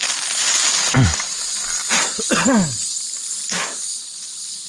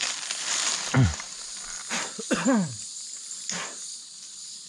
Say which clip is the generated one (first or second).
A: second